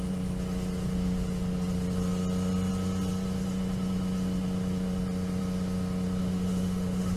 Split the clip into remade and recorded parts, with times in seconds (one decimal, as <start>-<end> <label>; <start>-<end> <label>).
0.0-6.2 recorded; 6.2-7.2 remade

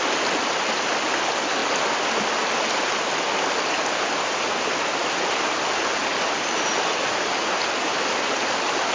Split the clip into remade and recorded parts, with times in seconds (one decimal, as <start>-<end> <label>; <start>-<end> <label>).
0.0-8.9 recorded

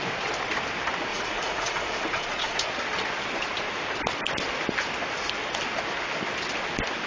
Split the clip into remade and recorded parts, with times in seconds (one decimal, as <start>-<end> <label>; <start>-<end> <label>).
0.0-1.1 recorded; 1.1-2.7 remade; 2.7-7.1 recorded

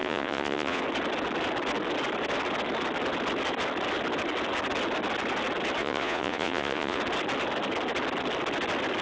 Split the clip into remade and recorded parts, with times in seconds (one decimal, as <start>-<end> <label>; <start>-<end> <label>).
0.0-0.8 remade; 0.8-5.8 recorded; 5.8-7.0 remade; 7.0-9.0 recorded